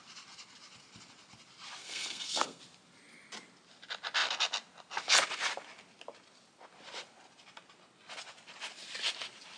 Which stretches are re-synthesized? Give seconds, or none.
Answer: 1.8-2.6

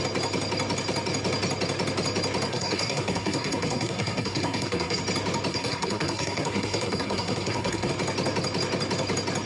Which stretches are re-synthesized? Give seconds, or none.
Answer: 2.5-5.0; 5.5-7.9

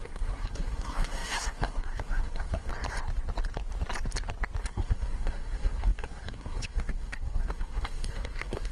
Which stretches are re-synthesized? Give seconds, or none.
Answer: 0.0-2.7; 4.6-8.7

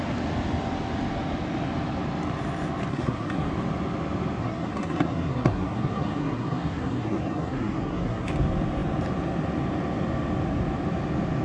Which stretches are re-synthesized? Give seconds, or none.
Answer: 2.9-3.5; 4.4-8.3

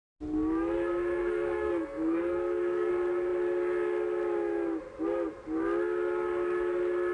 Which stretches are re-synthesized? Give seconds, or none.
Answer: 1.2-2.9

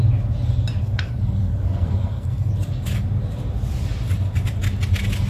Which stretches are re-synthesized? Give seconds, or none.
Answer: 0.8-2.5

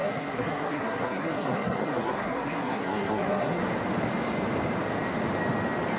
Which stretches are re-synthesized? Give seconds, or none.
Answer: 0.0-3.6

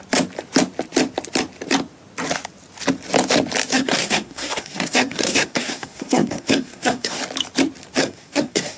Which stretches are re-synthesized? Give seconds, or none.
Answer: 3.7-7.2; 8.0-8.8